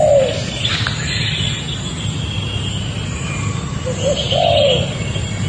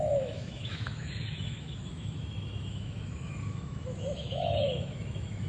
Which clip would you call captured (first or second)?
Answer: first